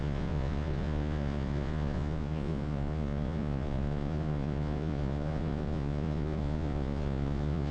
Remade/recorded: remade